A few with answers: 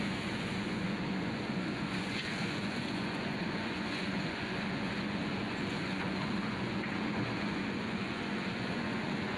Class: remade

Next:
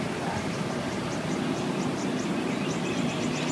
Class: recorded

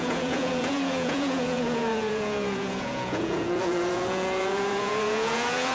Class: remade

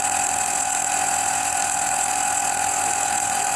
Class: remade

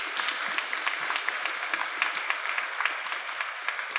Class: recorded